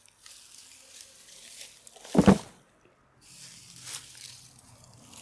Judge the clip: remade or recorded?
recorded